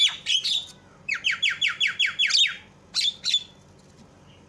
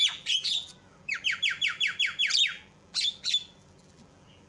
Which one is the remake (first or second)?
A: second